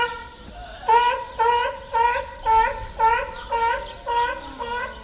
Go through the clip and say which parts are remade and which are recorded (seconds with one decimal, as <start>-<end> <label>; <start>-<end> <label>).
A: 0.0-5.0 recorded